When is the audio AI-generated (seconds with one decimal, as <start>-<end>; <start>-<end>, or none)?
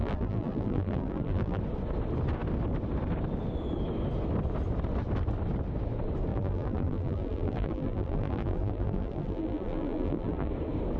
0.0-1.6; 6.3-10.5